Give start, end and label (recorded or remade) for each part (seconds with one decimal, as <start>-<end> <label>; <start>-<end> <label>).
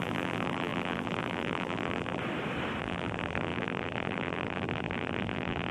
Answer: 0.0-2.2 remade; 2.2-2.8 recorded; 2.8-5.7 remade